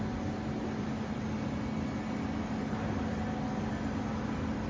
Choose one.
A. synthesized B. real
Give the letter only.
B